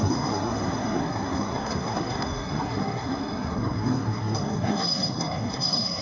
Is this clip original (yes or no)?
no